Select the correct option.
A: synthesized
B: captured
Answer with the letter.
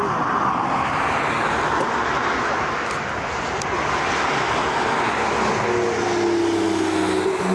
B